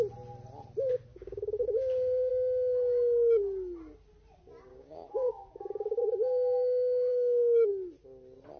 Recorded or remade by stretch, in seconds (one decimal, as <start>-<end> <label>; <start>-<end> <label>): 0.0-1.1 recorded; 1.1-2.3 remade; 2.3-4.7 recorded; 4.7-6.0 remade; 6.0-7.1 recorded; 7.1-7.7 remade; 7.7-8.6 recorded